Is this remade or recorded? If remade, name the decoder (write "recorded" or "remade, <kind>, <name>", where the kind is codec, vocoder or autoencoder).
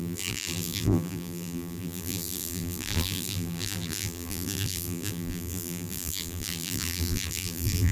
remade, vocoder, BigVGAN v2